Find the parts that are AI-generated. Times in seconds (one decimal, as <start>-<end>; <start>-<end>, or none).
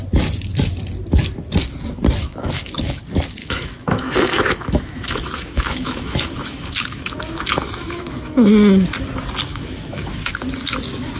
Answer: 2.2-3.0; 3.4-8.5; 9.5-10.3